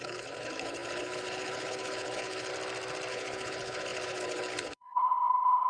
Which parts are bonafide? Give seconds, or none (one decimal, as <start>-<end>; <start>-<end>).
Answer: 2.5-3.1